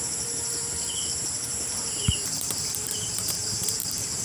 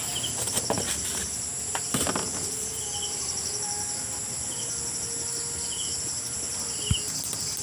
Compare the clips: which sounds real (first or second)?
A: second